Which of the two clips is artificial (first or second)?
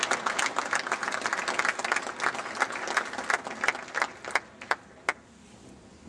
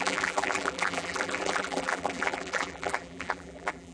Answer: second